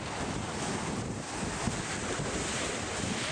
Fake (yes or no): no